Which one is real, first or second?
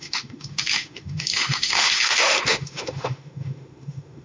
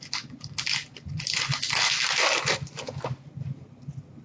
second